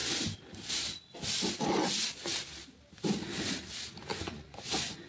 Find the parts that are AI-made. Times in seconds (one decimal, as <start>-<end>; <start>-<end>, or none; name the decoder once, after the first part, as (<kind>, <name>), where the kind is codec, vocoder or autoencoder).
4.1-5.1 (vocoder, Vocos)